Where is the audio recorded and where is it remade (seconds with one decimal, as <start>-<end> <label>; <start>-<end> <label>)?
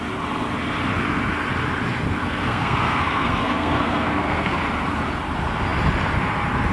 0.0-2.2 recorded; 2.2-4.6 remade; 4.6-6.7 recorded